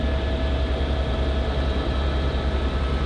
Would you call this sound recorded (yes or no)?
yes